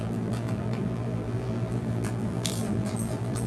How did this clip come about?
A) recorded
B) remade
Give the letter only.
B